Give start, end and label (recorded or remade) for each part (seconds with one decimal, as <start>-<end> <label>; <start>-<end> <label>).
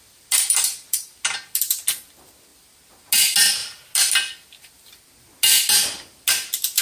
0.0-6.8 recorded